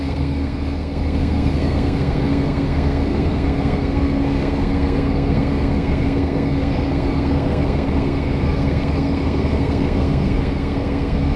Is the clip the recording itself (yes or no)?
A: no